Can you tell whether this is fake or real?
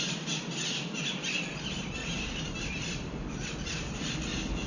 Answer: real